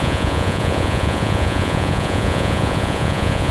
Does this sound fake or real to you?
fake